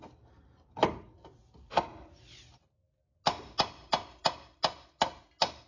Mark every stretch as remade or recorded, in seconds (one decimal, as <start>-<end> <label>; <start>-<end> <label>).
0.0-5.7 recorded